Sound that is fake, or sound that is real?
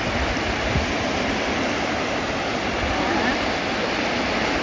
real